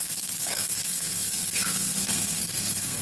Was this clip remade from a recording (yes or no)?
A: yes